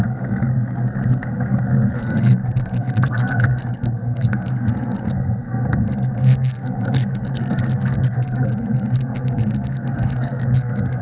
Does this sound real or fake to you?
fake